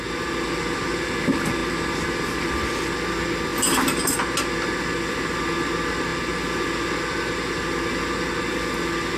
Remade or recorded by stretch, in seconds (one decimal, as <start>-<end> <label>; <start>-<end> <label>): 0.0-9.2 recorded